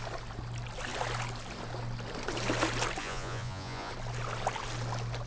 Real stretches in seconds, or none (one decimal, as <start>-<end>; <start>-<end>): 0.0-3.0; 3.9-5.3